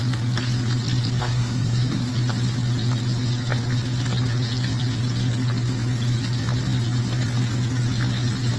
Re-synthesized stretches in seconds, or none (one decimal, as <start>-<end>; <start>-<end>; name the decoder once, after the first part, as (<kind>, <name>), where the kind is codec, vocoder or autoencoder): 1.2-2.1 (codec, SNAC)